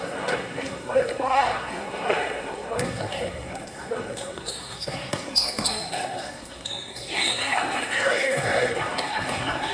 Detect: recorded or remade remade